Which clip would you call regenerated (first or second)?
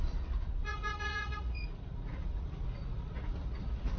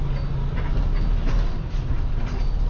first